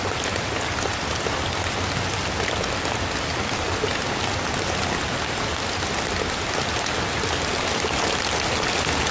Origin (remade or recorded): recorded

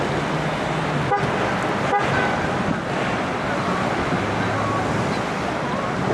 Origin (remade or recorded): recorded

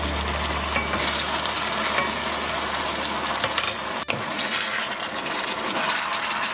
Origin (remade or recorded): recorded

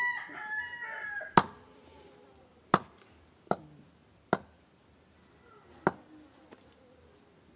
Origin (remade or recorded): recorded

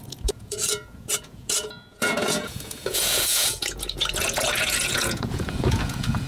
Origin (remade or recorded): remade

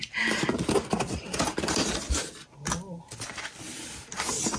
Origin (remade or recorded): recorded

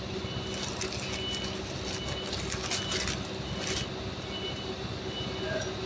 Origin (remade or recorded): recorded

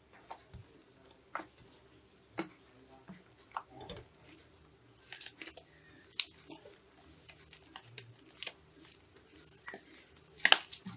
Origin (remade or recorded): recorded